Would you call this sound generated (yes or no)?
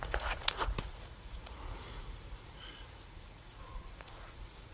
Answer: yes